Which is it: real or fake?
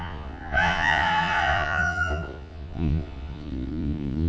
fake